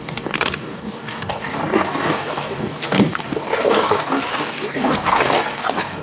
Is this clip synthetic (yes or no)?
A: yes